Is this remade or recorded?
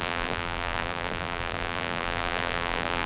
remade